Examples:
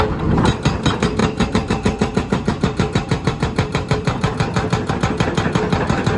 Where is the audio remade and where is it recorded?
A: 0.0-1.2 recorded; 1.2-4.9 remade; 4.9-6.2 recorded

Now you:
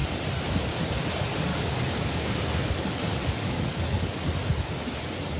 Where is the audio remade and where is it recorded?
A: 0.0-1.5 recorded; 1.5-4.3 remade; 4.3-5.4 recorded

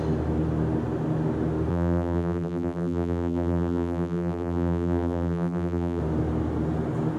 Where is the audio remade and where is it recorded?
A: 0.0-1.7 recorded; 1.7-6.0 remade; 6.0-7.2 recorded